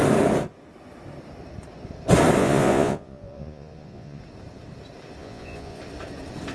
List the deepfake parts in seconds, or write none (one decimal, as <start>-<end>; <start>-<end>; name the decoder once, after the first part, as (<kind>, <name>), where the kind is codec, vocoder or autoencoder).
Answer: 2.4-4.2 (vocoder, Vocos); 5.2-5.8